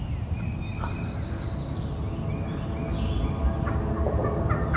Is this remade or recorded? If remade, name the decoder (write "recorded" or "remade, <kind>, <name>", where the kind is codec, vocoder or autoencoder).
recorded